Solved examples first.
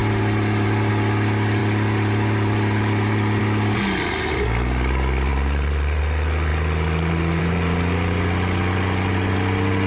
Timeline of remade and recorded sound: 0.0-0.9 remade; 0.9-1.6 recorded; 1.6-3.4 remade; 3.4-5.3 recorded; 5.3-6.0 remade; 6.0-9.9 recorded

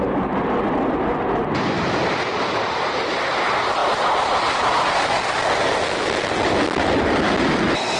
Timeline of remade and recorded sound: 0.0-8.0 recorded